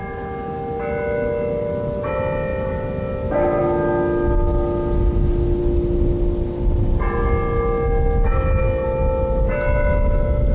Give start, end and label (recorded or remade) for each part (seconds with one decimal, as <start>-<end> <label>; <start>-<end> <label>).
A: 0.0-10.5 recorded

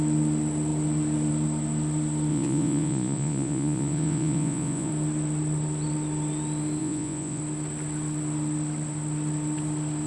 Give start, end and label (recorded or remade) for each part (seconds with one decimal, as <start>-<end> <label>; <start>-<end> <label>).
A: 0.0-2.3 recorded; 2.3-4.9 remade; 4.9-6.8 recorded; 6.8-7.4 remade; 7.4-10.1 recorded

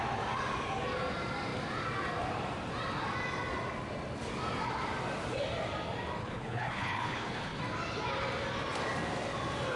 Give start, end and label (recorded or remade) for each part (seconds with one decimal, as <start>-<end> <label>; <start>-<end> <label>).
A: 0.0-6.2 recorded; 6.2-7.6 remade; 7.6-9.8 recorded

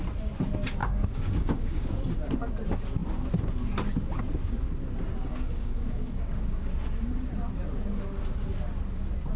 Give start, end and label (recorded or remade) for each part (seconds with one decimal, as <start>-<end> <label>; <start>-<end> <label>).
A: 0.0-0.8 recorded; 0.8-2.0 remade; 2.0-5.2 recorded; 5.2-6.7 remade; 6.7-9.4 recorded

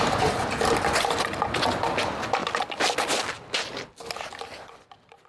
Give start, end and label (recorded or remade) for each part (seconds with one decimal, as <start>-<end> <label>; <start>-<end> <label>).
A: 0.0-5.3 recorded

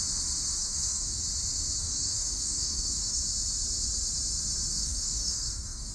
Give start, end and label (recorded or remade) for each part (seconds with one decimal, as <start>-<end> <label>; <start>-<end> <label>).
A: 0.0-0.6 recorded; 0.6-1.2 remade; 1.2-1.8 recorded; 1.8-3.2 remade; 3.2-4.7 recorded; 4.7-5.9 remade